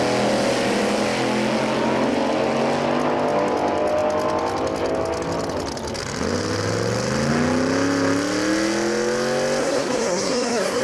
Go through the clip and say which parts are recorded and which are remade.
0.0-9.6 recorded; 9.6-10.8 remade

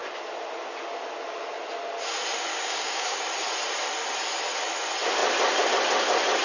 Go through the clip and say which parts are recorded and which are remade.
0.0-2.5 recorded; 2.5-3.2 remade; 3.2-6.4 recorded

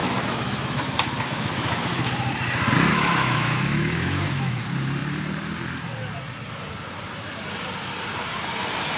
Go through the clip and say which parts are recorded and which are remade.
0.0-2.1 remade; 2.1-2.9 recorded; 2.9-4.5 remade; 4.5-9.0 recorded

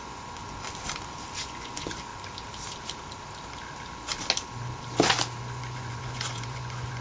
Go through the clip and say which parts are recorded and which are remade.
0.0-0.4 remade; 0.4-1.4 recorded; 1.4-2.1 remade; 2.1-5.4 recorded; 5.4-7.0 remade

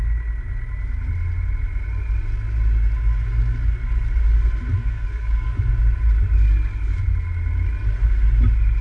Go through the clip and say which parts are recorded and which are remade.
0.0-4.8 recorded; 4.8-5.7 remade; 5.7-8.8 recorded